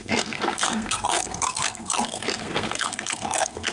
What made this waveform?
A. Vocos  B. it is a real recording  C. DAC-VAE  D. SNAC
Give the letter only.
D